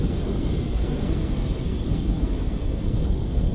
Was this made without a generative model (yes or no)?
no